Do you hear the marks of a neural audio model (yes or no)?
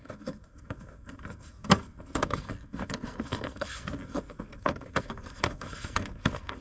yes